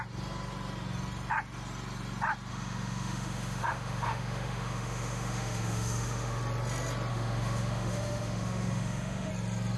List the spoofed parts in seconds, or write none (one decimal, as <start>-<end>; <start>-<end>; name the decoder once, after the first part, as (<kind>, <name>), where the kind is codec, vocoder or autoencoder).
2.5-6.4 (autoencoder, DAC-VAE); 7.1-9.3